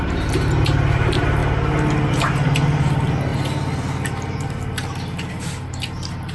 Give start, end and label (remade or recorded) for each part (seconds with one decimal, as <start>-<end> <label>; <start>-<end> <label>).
0.0-1.4 remade; 1.4-2.1 recorded; 2.1-3.3 remade; 3.3-5.3 recorded; 5.3-6.3 remade